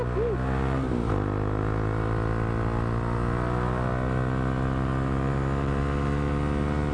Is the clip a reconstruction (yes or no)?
no